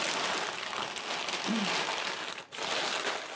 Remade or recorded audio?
recorded